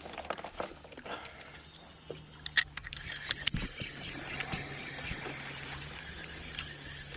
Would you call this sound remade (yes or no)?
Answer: no